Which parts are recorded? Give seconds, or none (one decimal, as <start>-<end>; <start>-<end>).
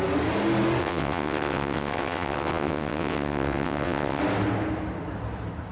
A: 0.0-0.8; 4.2-5.7